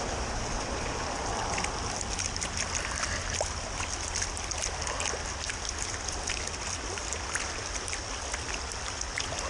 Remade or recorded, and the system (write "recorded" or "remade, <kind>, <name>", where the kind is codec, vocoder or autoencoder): recorded